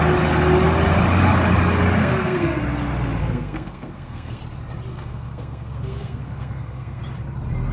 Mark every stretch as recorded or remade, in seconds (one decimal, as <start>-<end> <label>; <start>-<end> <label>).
0.0-2.0 recorded; 2.0-2.6 remade; 2.6-3.2 recorded; 3.2-4.4 remade; 4.4-4.9 recorded; 4.9-7.0 remade; 7.0-7.7 recorded